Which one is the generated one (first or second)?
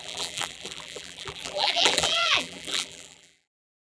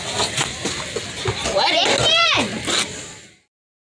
first